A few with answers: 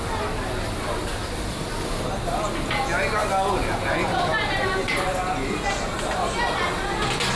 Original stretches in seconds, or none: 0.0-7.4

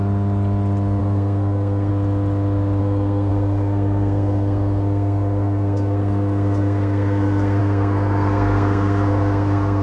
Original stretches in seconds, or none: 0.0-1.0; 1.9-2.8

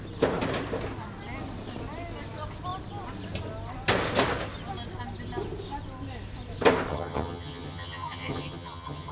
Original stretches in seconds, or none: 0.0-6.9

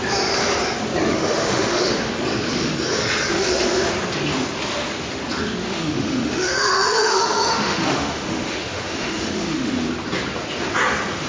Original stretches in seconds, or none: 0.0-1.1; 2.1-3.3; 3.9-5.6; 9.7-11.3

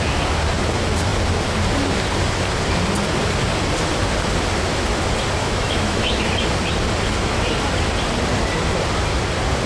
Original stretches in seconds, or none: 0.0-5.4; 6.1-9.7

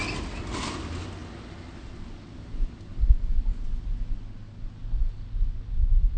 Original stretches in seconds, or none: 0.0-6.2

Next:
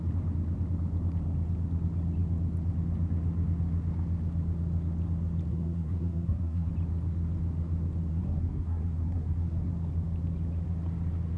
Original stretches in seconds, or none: 0.0-5.5; 6.7-8.1; 9.7-11.4